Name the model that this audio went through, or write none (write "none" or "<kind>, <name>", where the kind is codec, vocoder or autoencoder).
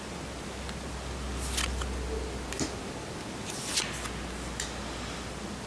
none